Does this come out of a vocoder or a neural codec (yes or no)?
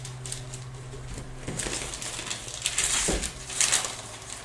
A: no